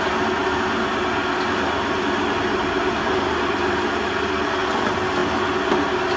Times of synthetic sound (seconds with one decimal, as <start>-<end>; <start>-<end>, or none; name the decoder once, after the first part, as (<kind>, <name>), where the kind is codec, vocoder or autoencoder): none